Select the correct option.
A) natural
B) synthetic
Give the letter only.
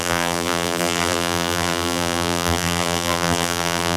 B